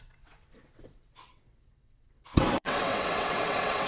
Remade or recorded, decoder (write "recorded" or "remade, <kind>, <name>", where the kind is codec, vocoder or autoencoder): remade, vocoder, WaveNeXt